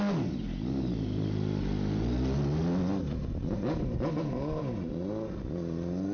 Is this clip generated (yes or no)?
no